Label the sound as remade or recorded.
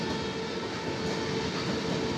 recorded